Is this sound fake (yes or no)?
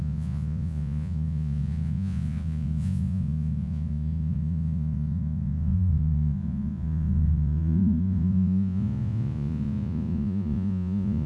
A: yes